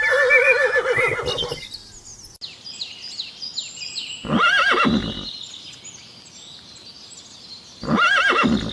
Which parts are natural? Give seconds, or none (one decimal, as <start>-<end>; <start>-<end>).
0.0-8.7